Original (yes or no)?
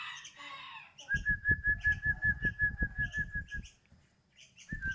yes